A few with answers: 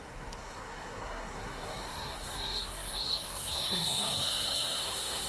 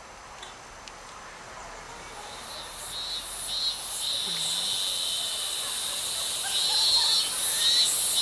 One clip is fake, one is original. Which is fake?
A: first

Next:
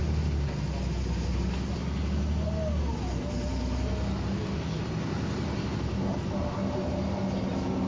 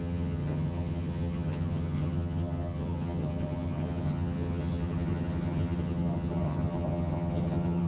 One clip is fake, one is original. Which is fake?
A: second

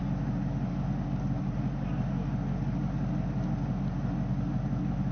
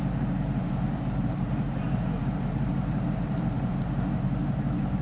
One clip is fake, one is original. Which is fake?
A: second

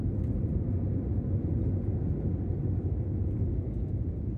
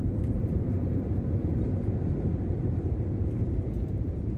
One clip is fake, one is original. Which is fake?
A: second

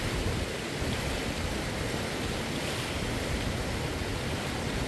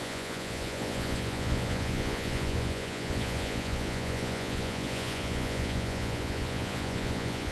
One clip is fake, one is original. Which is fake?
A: second